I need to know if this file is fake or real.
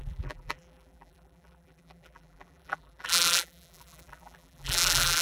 fake